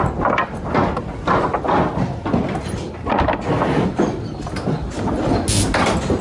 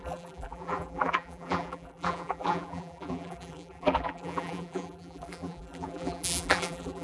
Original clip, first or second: first